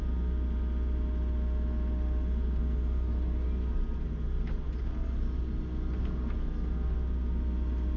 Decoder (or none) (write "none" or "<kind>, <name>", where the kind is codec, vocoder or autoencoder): none